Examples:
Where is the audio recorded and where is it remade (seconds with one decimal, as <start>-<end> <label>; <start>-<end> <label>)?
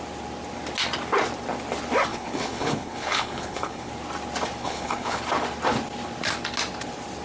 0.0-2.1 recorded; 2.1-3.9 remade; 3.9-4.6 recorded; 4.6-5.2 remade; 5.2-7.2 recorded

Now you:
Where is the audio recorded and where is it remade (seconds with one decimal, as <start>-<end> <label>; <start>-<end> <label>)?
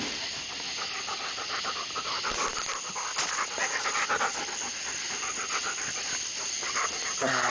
0.0-7.5 recorded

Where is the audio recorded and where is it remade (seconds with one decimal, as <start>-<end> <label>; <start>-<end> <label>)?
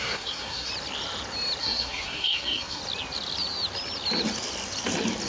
0.0-0.7 remade; 0.7-1.6 recorded; 1.6-2.8 remade; 2.8-5.3 recorded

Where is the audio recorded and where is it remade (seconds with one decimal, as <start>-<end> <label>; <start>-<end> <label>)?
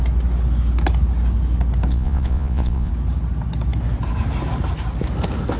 0.0-1.9 recorded; 1.9-2.9 remade; 2.9-5.6 recorded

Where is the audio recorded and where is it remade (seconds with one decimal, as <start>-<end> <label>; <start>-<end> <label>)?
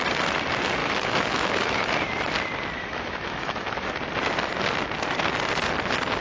0.0-0.8 recorded; 0.8-1.9 remade; 1.9-2.8 recorded; 2.8-3.9 remade; 3.9-6.2 recorded